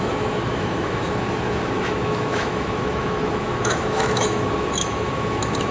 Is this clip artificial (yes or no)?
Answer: yes